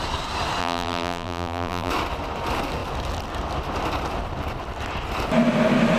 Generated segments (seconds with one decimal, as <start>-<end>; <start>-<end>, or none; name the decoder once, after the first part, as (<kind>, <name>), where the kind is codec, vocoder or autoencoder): 0.6-1.9 (vocoder, BigVGAN v2)